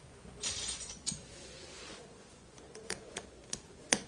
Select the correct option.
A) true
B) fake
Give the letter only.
B